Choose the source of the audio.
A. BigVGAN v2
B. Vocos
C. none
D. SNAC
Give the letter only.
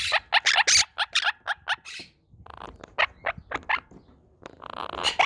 C